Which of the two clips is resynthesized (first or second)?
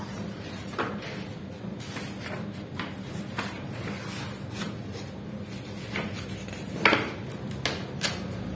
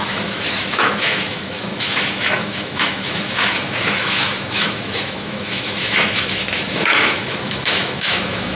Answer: second